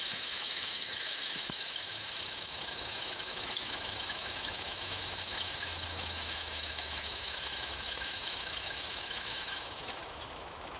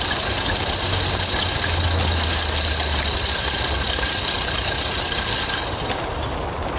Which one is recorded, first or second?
second